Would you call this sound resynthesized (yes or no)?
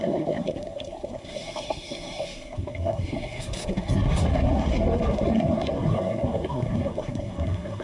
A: yes